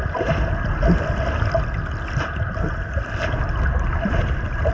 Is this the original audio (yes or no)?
yes